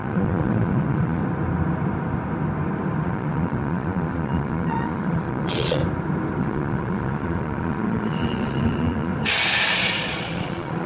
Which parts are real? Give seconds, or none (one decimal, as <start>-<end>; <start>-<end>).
1.2-3.0; 5.8-6.4; 9.1-9.7